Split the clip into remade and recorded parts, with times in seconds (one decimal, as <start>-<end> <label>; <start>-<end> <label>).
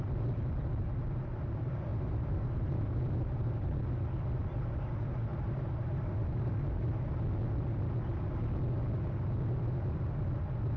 0.0-1.9 recorded; 1.9-3.9 remade; 3.9-5.3 recorded; 5.3-7.0 remade; 7.0-10.8 recorded